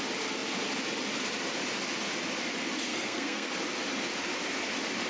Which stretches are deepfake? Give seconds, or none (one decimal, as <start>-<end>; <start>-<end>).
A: 2.9-3.5